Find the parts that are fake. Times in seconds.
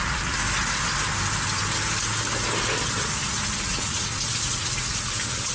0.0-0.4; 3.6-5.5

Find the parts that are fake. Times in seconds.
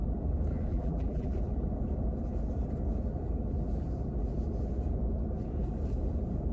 0.7-1.3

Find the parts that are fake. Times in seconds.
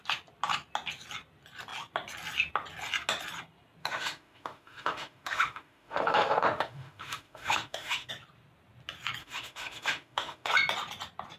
3.8-8.1; 9.2-10.5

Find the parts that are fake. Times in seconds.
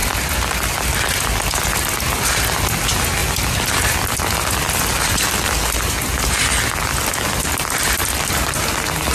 none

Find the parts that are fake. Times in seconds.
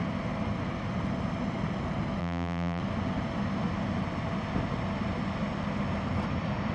2.2-2.8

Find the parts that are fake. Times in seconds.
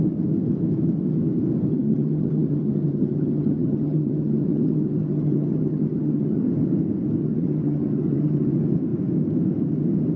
1.7-6.5; 7.2-8.5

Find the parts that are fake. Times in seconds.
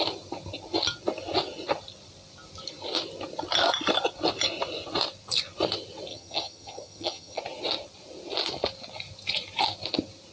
6.1-7.4